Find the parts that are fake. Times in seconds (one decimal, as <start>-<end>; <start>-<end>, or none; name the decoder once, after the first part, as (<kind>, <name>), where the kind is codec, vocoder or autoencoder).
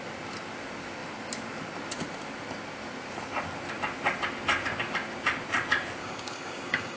6.0-7.0 (codec, DAC)